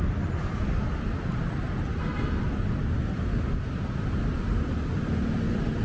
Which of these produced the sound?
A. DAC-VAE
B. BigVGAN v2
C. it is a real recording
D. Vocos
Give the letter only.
C